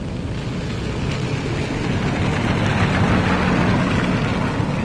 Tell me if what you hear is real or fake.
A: real